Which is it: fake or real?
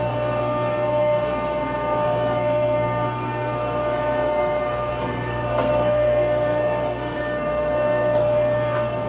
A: fake